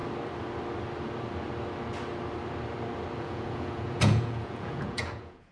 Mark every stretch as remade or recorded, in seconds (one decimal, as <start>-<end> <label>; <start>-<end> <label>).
0.0-3.2 recorded; 3.2-5.5 remade